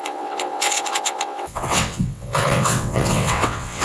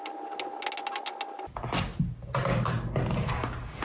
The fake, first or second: first